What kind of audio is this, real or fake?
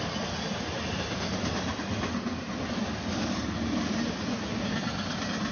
real